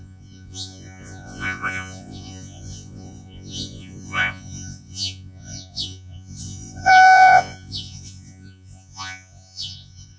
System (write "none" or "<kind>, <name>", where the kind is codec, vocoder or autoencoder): vocoder, Vocos